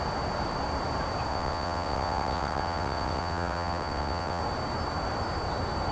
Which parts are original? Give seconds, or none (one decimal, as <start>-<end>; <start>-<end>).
0.0-1.3; 4.4-5.9